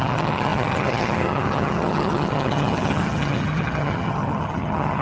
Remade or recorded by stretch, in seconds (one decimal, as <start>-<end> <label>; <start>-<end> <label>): 0.0-5.0 remade